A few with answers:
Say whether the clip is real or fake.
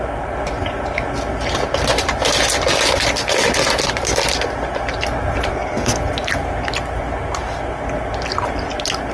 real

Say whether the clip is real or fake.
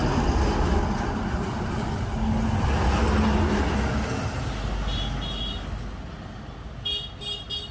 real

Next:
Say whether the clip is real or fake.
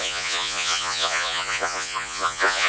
fake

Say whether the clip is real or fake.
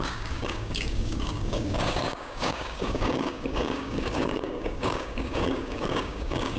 fake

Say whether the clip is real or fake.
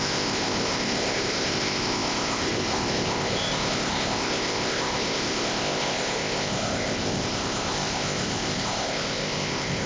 fake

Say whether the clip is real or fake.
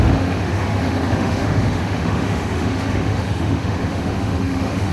fake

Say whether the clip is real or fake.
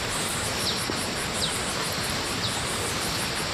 real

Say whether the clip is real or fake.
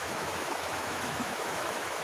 fake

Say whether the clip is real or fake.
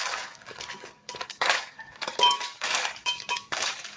fake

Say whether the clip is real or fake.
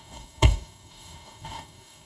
fake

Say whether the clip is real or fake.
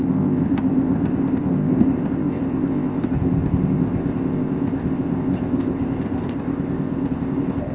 fake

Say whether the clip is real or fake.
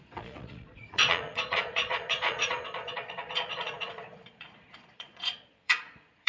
fake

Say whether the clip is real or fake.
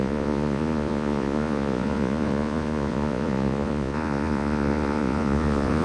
fake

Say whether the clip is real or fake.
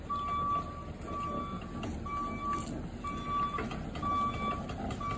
real